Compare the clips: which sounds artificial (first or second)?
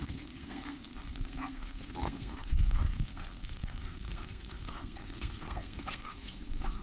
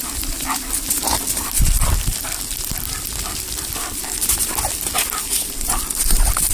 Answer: first